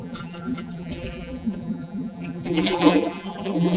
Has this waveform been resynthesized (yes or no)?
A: yes